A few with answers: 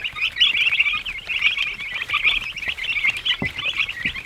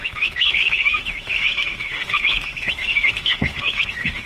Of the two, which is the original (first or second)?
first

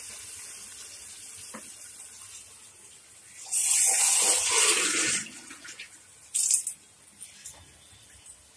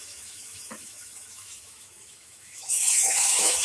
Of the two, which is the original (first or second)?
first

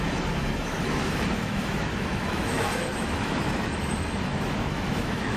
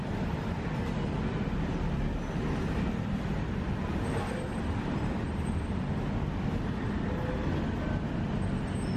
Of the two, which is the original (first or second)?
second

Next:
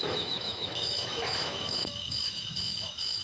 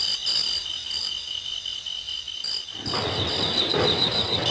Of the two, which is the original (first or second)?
second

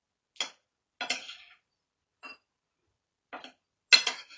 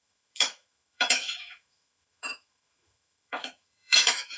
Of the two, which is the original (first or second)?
first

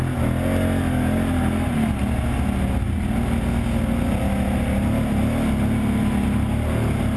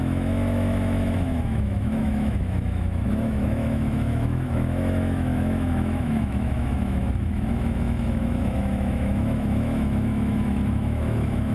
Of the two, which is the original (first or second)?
first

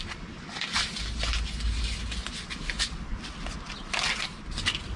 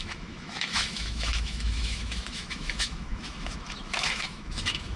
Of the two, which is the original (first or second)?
first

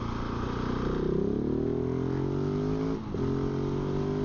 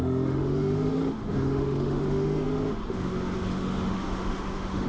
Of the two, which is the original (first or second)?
first